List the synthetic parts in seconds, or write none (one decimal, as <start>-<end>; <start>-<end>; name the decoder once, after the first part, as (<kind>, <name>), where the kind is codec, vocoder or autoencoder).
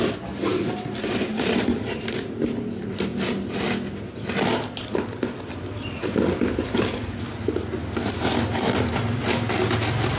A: none